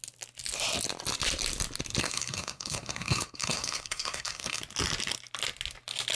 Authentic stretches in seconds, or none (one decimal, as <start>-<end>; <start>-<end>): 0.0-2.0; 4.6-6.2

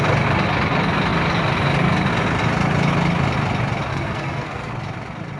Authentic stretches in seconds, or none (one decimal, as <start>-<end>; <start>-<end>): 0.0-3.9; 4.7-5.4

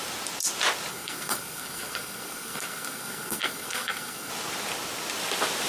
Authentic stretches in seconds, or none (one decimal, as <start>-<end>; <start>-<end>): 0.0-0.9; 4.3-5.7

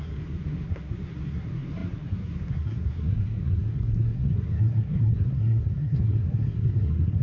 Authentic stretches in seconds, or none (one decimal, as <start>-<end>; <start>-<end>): none

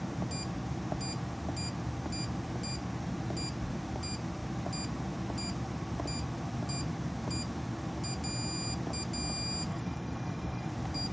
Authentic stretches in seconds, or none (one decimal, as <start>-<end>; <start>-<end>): 0.0-9.7; 10.7-11.1